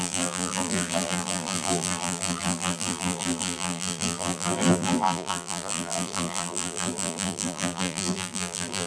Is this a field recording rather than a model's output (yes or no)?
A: no